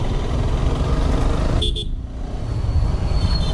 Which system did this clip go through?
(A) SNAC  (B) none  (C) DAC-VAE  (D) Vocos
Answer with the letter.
B